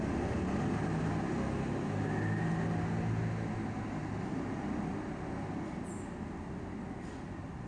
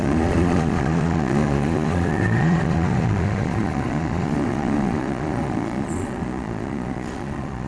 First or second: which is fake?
second